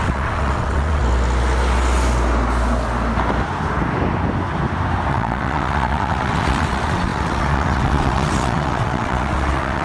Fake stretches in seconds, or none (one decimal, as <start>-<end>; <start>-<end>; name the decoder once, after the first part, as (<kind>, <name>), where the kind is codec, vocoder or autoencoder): 0.0-1.0 (vocoder, WaveNeXt); 5.1-9.8